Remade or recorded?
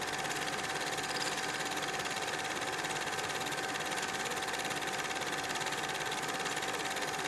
recorded